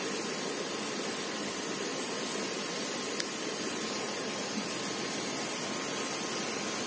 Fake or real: real